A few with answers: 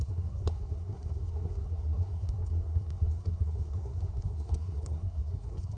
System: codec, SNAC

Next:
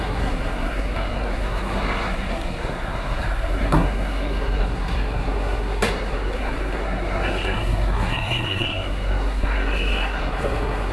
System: codec, SNAC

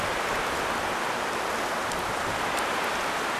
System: none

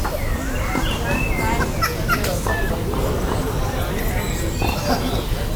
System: none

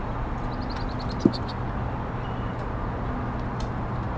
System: none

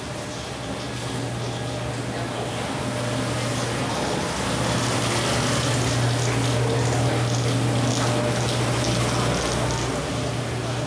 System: none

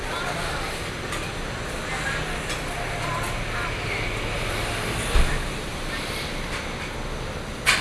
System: none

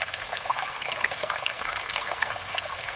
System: codec, SNAC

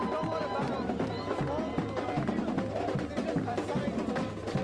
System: none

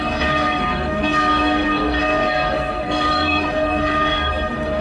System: codec, SNAC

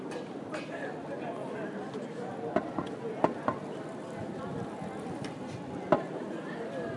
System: none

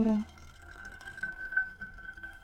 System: codec, SNAC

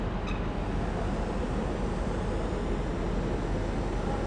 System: none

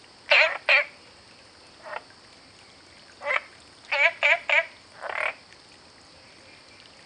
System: none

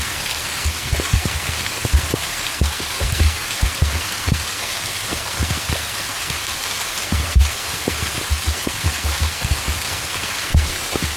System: codec, SNAC